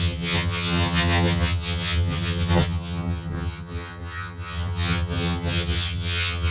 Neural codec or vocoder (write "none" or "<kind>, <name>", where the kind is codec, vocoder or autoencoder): vocoder, HiFi-GAN